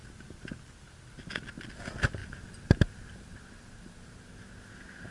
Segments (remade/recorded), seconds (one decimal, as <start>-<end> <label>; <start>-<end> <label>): 0.0-2.2 recorded; 2.2-4.3 remade; 4.3-5.1 recorded